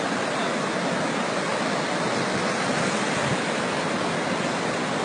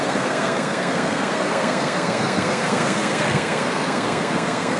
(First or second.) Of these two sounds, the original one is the first